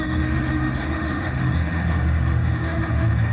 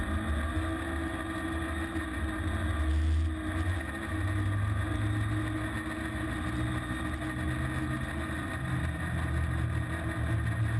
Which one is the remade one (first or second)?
first